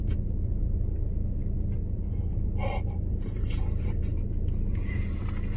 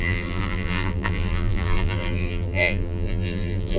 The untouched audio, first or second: first